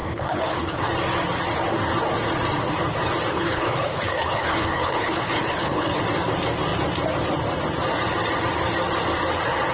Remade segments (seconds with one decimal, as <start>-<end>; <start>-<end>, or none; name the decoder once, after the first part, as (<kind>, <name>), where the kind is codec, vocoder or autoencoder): 0.0-0.8 (codec, HILCodec); 3.3-6.0